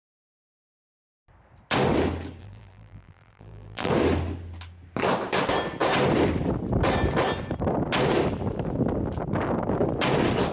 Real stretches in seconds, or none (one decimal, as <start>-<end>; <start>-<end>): 0.0-2.4; 3.9-10.5